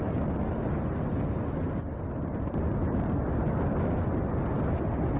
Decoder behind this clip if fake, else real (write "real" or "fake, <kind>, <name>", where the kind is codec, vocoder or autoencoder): real